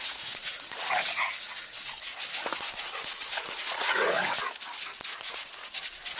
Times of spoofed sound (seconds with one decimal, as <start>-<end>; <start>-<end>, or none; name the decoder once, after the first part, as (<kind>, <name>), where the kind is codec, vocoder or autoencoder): 0.0-2.1 (vocoder, Vocos); 2.7-4.4; 5.2-6.2